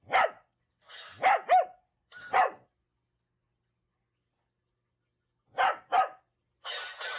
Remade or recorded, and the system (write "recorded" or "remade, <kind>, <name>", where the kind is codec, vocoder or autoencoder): recorded